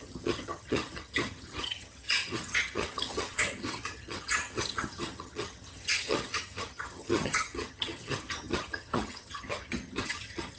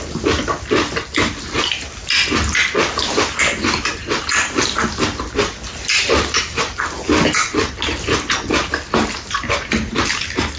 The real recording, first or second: second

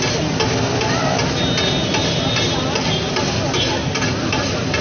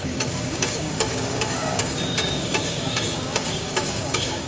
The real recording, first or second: first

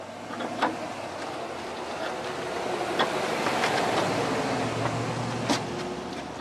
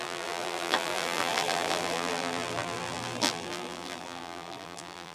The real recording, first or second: first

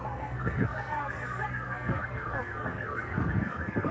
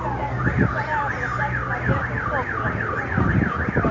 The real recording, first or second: second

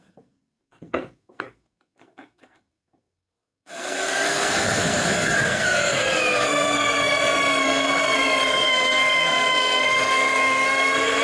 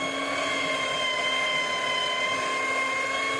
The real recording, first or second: second